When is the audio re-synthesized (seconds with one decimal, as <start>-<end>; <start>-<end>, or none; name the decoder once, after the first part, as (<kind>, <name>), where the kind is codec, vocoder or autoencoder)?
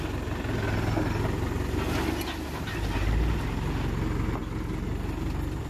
none